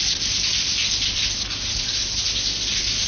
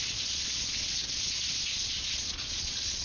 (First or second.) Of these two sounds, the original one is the first